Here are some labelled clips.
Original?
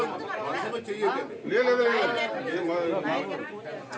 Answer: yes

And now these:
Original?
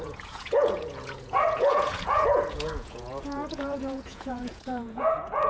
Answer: no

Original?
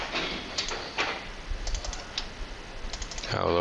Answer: yes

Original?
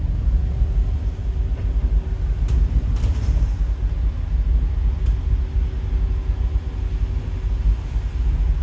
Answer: yes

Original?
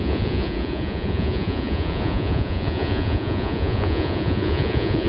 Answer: no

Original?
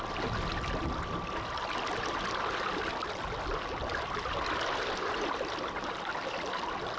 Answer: yes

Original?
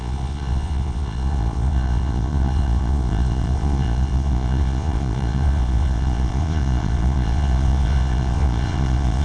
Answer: no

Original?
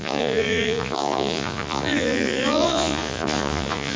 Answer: no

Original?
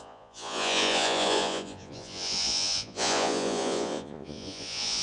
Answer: no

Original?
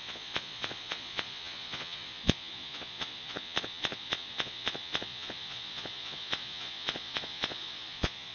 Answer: no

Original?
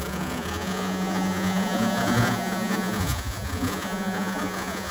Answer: no